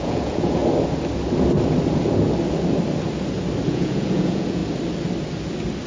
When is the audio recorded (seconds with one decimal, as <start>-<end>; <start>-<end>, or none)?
0.6-3.7; 4.6-5.9